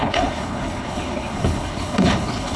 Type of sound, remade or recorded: remade